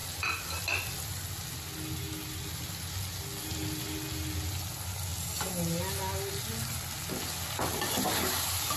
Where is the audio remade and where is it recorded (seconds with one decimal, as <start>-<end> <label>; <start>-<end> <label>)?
0.0-8.8 recorded